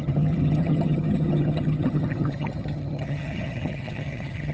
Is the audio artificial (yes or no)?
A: yes